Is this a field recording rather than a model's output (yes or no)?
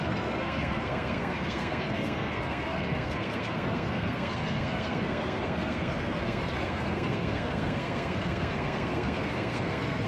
no